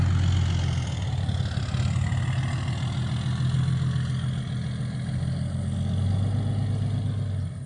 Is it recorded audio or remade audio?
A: recorded